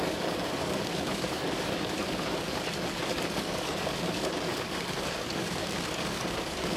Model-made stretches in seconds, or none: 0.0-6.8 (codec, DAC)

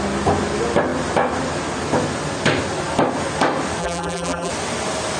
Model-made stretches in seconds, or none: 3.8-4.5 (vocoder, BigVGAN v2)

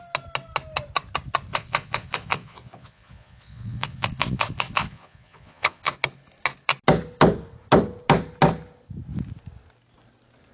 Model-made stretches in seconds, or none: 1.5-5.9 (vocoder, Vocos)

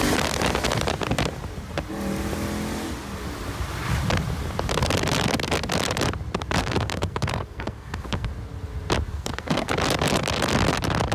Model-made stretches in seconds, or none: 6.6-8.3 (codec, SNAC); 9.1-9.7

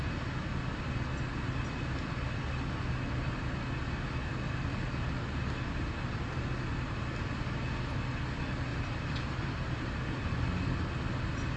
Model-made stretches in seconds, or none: 8.7-10.0 (vocoder, BigVGAN v2)